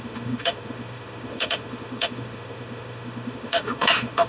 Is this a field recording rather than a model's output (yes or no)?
no